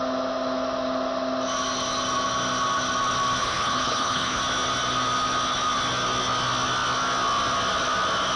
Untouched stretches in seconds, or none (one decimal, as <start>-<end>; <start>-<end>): 0.0-3.4; 4.4-8.4